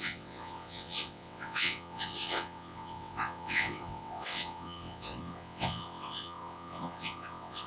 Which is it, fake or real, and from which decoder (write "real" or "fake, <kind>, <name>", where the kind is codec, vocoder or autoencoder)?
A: fake, vocoder, WaveNeXt